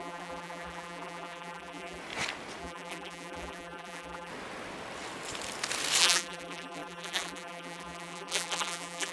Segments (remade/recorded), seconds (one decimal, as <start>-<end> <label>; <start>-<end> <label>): 0.0-2.0 remade; 2.0-2.6 recorded; 2.6-4.3 remade; 4.3-6.0 recorded; 6.0-9.1 remade